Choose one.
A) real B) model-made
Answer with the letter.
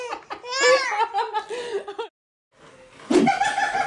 A